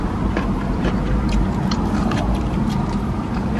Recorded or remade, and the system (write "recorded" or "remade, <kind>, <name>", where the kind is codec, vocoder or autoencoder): remade, vocoder, BigVGAN v2